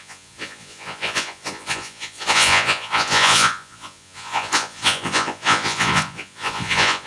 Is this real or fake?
fake